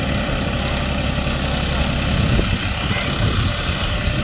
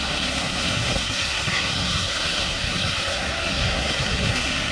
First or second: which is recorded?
first